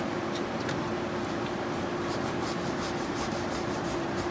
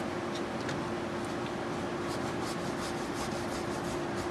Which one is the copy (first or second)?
first